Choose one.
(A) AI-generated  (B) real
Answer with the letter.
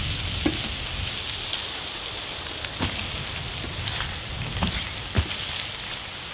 B